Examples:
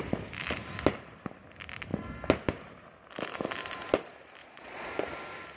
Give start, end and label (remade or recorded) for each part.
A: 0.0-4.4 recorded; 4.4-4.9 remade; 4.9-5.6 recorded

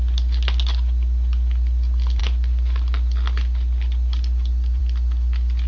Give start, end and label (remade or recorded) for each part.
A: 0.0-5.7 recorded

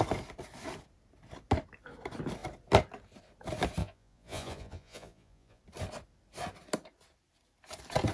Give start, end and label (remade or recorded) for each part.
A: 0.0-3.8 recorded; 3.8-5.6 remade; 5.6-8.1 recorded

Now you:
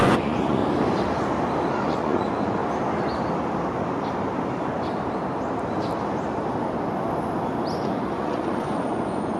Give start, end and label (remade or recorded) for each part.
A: 0.0-0.6 remade; 0.6-1.7 recorded; 1.7-2.6 remade; 2.6-7.8 recorded; 7.8-9.4 remade